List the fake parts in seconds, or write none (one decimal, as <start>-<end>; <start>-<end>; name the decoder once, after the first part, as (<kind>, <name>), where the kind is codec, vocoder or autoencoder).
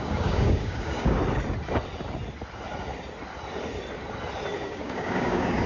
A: 0.0-1.2 (codec, DAC); 4.6-5.7